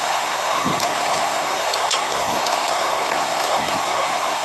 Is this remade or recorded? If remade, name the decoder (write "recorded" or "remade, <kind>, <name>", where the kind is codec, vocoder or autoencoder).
remade, codec, SNAC